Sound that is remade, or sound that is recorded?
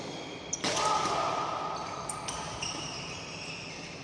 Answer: recorded